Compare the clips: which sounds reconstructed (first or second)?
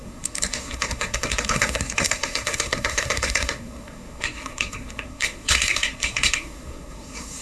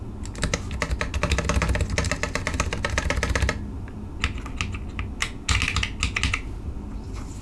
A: first